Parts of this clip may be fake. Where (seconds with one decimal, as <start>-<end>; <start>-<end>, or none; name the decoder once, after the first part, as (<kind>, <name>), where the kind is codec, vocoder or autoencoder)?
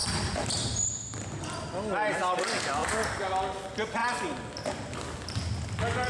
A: none